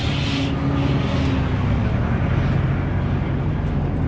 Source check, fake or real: real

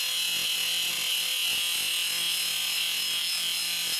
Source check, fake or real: real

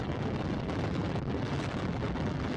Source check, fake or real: fake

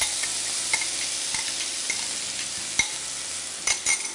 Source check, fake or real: real